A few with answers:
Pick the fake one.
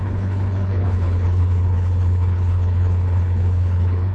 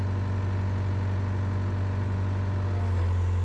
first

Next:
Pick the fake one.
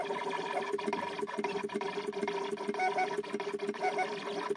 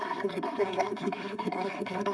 second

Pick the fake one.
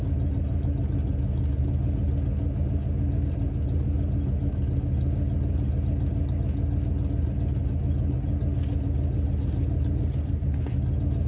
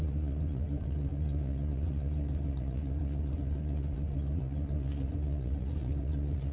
second